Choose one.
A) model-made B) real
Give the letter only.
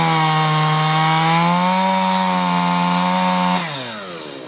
B